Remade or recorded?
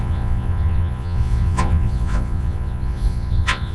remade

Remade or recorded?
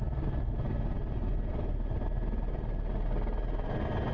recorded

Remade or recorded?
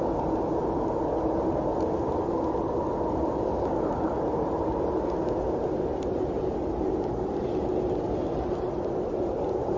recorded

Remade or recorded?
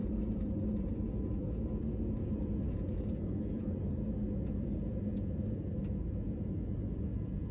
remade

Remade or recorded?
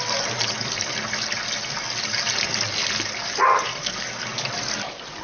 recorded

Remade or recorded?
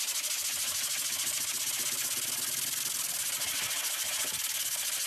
recorded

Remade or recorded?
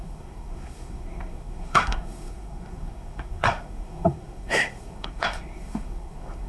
remade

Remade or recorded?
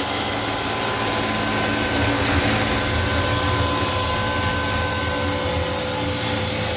recorded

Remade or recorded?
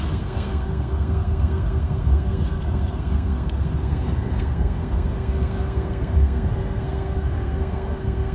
remade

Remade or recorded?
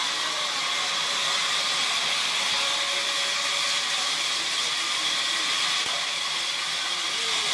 recorded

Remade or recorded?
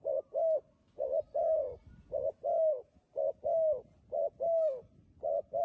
recorded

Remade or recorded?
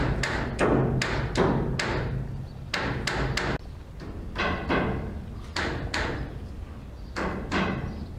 recorded